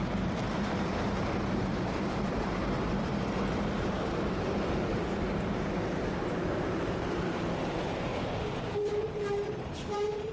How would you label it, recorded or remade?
remade